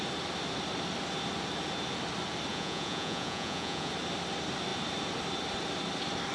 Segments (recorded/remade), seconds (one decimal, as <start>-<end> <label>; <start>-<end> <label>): 0.0-2.5 recorded; 2.5-3.9 remade; 3.9-6.3 recorded